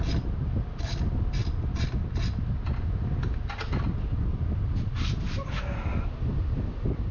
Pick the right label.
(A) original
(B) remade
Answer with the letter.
A